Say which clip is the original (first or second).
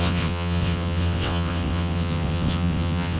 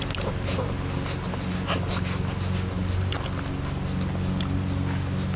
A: second